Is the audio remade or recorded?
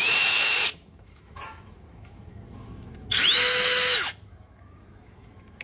remade